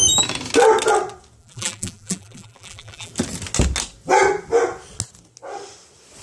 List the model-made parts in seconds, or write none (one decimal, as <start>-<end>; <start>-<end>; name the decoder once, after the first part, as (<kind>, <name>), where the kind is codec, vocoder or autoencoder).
1.4-3.1 (vocoder, BigVGAN v2)